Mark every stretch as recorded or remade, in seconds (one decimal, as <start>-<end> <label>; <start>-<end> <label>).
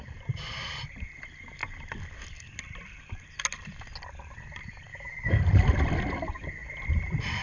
0.0-4.9 recorded; 4.9-5.4 remade; 5.4-7.4 recorded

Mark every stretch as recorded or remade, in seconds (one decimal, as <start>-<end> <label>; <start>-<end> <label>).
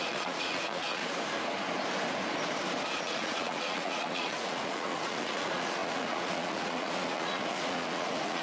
0.0-1.0 remade; 1.0-3.0 recorded; 3.0-8.4 remade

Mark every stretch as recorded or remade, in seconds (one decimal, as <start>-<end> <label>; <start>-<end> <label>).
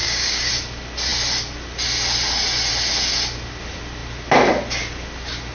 0.0-0.5 remade; 0.5-5.5 recorded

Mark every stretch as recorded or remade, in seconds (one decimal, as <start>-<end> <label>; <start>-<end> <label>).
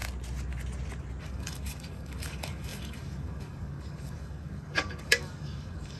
0.0-1.2 recorded; 1.2-6.0 remade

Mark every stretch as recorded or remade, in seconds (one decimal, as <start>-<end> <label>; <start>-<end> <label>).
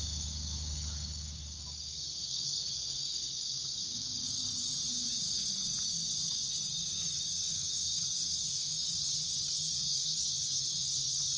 0.0-4.7 remade; 4.7-5.3 recorded; 5.3-11.4 remade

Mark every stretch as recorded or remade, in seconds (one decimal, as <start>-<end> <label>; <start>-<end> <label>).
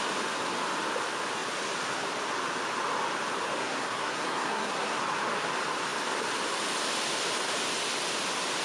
0.0-3.6 recorded; 3.6-5.0 remade; 5.0-8.6 recorded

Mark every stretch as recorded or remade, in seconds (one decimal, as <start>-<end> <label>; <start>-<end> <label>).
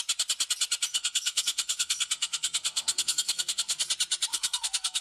0.0-0.9 recorded; 0.9-3.9 remade; 3.9-4.3 recorded; 4.3-5.0 remade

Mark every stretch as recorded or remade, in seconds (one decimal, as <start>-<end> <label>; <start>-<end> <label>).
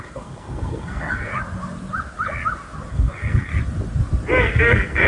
0.0-1.3 remade; 1.3-2.9 recorded; 2.9-3.5 remade; 3.5-4.4 recorded; 4.4-5.1 remade